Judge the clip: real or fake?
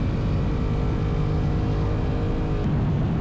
real